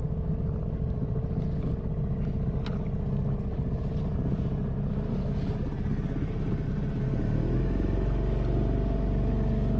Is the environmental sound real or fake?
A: real